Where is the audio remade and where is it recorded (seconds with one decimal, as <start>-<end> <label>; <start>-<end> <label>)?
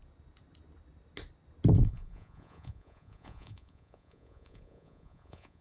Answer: 0.0-1.8 recorded; 1.8-5.6 remade